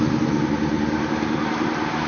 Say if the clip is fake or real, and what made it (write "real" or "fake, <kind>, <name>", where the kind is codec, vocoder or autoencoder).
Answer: real